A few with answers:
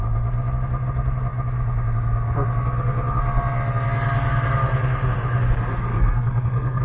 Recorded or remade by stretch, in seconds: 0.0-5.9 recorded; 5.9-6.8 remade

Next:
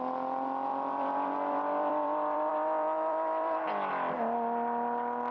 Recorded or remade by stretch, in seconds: 0.0-0.7 recorded; 0.7-3.9 remade; 3.9-5.3 recorded

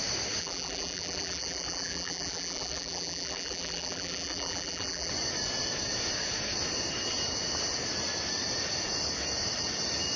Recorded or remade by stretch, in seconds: 0.0-0.4 recorded; 0.4-5.1 remade; 5.1-10.2 recorded

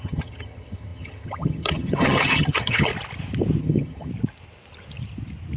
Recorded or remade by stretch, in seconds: 0.0-2.9 remade; 2.9-3.6 recorded; 3.6-4.1 remade; 4.1-5.6 recorded

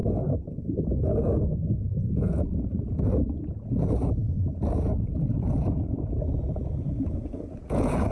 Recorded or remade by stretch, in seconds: 0.0-1.8 recorded; 1.8-8.1 remade

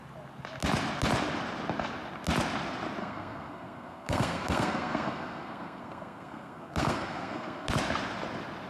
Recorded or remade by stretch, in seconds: 0.0-3.0 recorded; 3.0-7.7 remade; 7.7-8.7 recorded

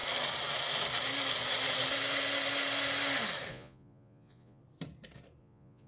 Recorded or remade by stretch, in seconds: 0.0-3.5 recorded; 3.5-4.6 remade; 4.6-5.4 recorded; 5.4-5.9 remade

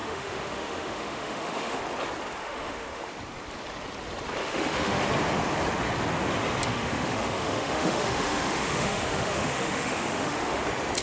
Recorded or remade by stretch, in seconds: 0.0-1.8 remade; 1.8-2.4 recorded; 2.4-3.1 remade; 3.1-4.4 recorded; 4.4-5.0 remade; 5.0-6.7 recorded; 6.7-10.6 remade; 10.6-11.0 recorded